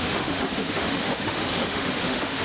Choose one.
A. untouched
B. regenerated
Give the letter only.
B